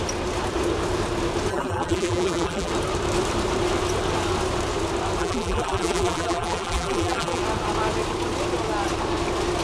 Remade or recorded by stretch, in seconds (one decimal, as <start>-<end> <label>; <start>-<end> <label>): 0.0-1.5 recorded; 1.5-2.7 remade; 2.7-5.2 recorded; 5.2-7.4 remade; 7.4-9.6 recorded